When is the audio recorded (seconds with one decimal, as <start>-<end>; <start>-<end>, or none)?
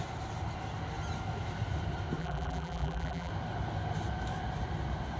0.0-2.2; 3.3-5.2